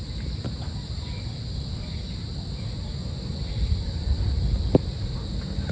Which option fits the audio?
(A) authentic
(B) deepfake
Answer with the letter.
A